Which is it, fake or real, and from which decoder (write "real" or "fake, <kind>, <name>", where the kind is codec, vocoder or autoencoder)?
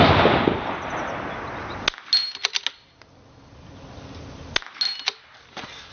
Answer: real